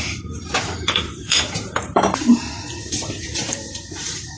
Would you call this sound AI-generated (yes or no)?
yes